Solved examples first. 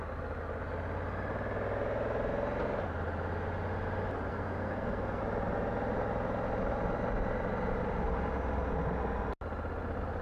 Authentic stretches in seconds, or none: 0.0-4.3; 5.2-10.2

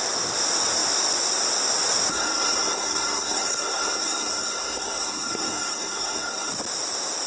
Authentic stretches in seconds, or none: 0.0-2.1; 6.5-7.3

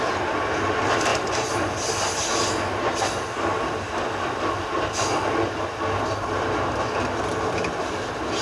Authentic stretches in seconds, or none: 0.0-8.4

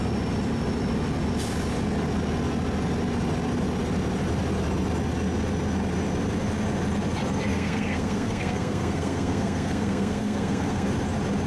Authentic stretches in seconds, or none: 0.0-7.5; 10.9-11.5